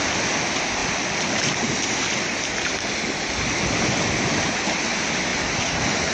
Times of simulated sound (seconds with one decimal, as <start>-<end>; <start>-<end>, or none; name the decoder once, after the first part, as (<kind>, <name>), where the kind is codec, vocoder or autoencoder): none